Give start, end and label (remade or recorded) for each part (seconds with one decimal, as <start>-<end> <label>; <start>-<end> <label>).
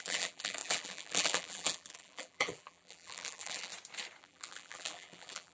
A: 0.0-3.7 remade; 3.7-4.2 recorded; 4.2-5.5 remade